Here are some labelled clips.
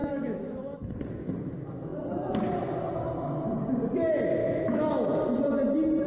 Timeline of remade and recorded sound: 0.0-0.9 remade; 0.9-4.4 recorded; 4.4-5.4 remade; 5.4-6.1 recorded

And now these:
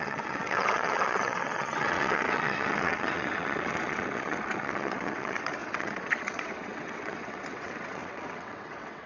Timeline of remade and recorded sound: 0.0-9.1 remade

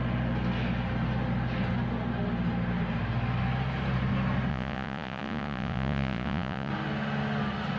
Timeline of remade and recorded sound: 0.0-4.5 recorded; 4.5-6.7 remade; 6.7-7.8 recorded

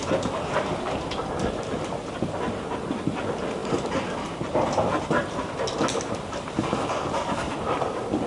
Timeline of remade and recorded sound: 0.0-8.3 recorded